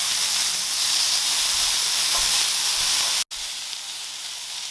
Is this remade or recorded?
recorded